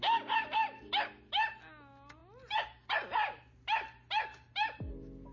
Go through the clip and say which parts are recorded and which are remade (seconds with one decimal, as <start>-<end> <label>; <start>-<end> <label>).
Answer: 0.0-5.3 recorded

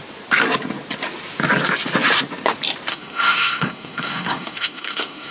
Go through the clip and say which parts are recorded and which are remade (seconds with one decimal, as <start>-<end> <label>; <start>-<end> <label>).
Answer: 0.0-2.9 recorded; 2.9-5.3 remade